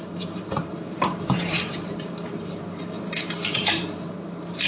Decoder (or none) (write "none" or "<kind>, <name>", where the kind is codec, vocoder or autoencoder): vocoder, BigVGAN v2